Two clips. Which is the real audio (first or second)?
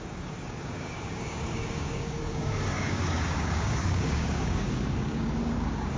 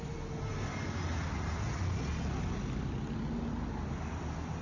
second